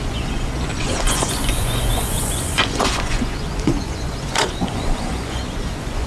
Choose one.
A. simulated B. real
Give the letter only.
A